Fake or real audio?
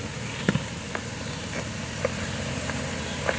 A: real